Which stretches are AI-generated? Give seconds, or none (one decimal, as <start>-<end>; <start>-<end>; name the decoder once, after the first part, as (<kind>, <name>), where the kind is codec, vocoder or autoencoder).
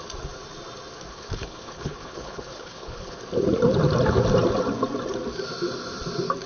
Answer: 1.1-3.2 (codec, HILCodec)